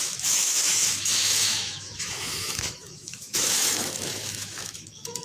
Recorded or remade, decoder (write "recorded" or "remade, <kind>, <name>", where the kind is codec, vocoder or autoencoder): remade, autoencoder, DAC-VAE